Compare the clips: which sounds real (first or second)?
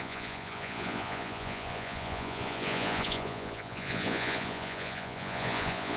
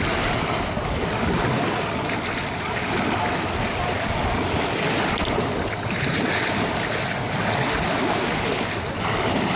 second